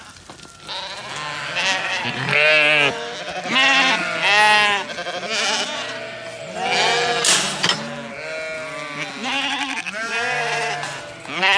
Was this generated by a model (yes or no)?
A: no